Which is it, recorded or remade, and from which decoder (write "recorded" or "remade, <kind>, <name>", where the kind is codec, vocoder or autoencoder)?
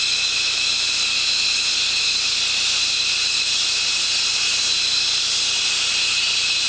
recorded